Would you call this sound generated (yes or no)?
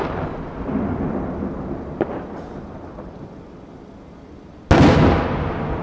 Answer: no